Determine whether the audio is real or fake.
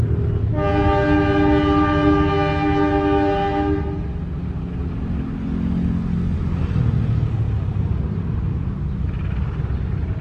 real